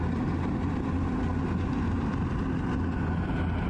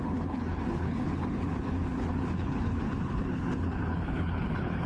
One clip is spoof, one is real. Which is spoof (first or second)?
second